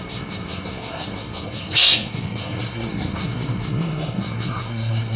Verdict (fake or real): fake